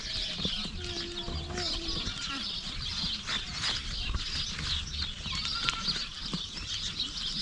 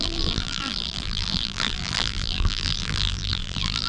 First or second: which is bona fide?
first